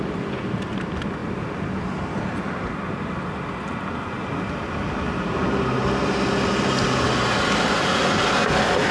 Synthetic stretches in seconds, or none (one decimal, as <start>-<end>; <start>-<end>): none